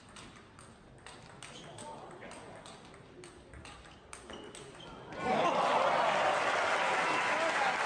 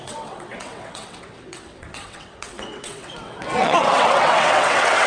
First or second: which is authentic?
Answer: first